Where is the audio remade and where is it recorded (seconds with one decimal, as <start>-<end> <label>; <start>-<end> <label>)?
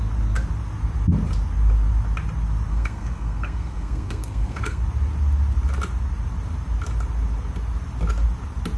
0.0-2.7 recorded; 2.7-4.8 remade; 4.8-8.8 recorded